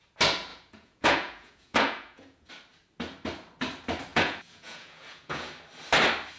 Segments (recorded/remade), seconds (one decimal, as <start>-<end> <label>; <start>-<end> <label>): 0.0-0.5 recorded; 0.5-2.5 remade; 2.5-4.1 recorded; 4.1-5.5 remade; 5.5-6.4 recorded